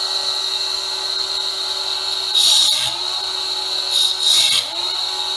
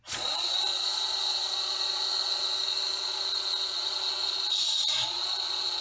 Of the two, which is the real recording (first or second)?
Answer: first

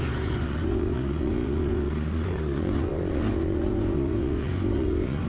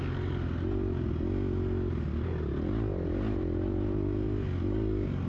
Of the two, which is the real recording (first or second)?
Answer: second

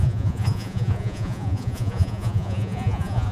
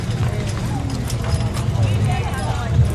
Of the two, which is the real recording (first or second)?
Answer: second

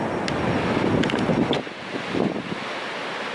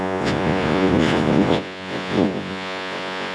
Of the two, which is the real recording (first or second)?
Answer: first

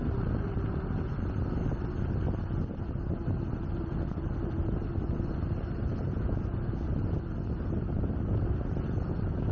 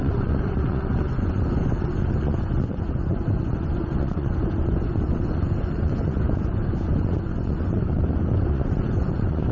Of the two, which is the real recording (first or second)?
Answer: first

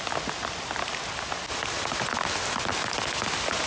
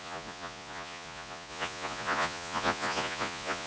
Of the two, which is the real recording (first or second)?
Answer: first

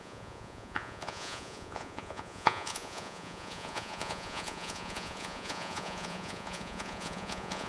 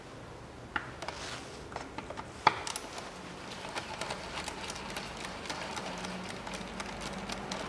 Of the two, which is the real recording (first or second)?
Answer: second